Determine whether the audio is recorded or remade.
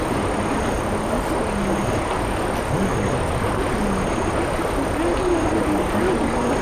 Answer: recorded